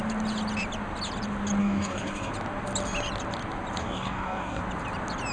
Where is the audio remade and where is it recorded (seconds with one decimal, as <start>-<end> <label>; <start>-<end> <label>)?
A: 0.0-1.6 recorded; 1.6-2.3 remade; 2.3-3.8 recorded; 3.8-4.6 remade; 4.6-5.3 recorded